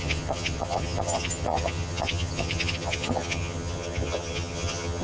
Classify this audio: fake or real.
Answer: fake